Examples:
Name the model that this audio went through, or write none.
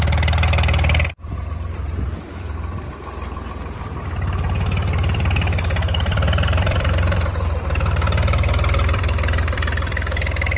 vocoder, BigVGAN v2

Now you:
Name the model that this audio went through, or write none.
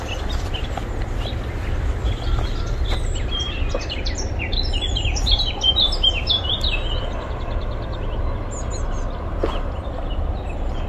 vocoder, BigVGAN v2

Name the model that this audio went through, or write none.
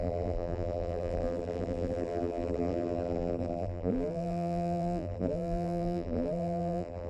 vocoder, BigVGAN v2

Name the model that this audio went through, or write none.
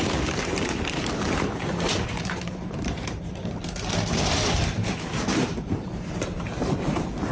vocoder, BigVGAN v2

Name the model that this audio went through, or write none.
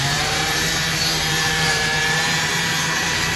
vocoder, BigVGAN v2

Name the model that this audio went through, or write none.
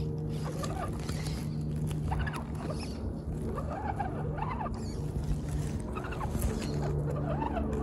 none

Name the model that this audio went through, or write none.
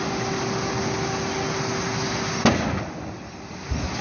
none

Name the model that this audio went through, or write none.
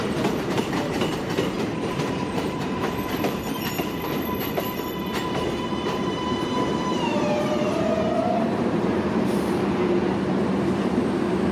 vocoder, BigVGAN v2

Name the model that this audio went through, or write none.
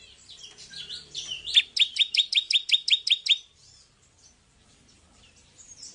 vocoder, BigVGAN v2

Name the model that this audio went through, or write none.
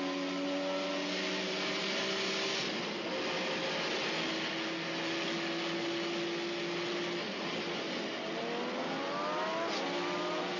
none